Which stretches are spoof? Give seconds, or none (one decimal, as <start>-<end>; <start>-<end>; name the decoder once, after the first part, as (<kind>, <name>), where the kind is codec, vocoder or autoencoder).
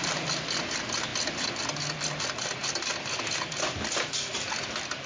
none